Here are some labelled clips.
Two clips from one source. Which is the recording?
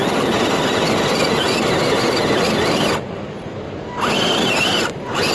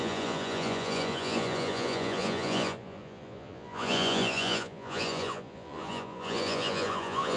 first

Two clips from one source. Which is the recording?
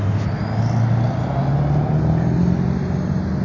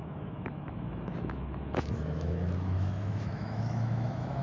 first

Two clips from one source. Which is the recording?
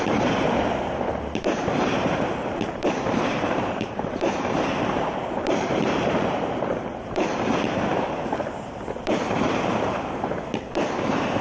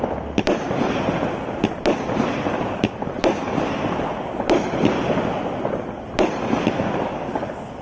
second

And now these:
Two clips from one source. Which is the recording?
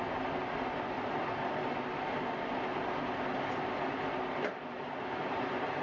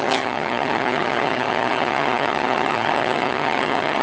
first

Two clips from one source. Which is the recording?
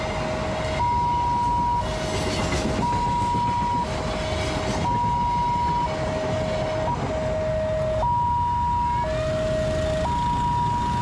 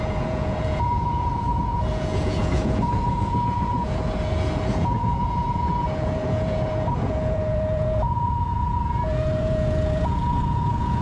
first